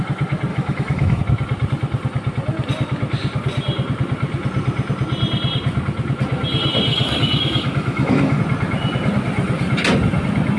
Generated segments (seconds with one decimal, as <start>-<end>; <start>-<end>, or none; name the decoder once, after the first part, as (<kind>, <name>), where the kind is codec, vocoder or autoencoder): 0.5-1.2 (autoencoder, DAC-VAE); 6.9-8.4